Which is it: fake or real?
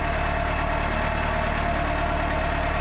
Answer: real